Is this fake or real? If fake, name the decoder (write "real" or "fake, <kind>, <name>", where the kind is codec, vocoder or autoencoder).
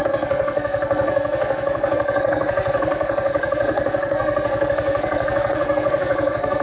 fake, codec, SNAC